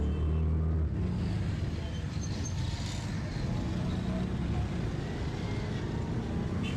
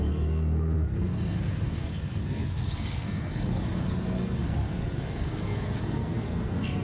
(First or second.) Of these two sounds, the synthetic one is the second